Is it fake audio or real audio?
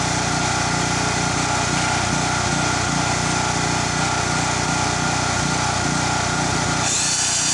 real